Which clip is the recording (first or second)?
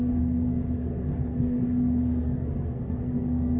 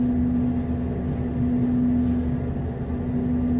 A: second